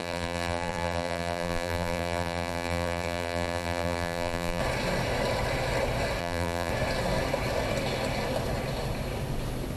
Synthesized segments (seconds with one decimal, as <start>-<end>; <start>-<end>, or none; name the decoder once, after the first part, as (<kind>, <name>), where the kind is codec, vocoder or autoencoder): 0.0-4.6 (vocoder, BigVGAN v2); 6.2-6.7